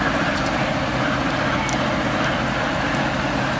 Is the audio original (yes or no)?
yes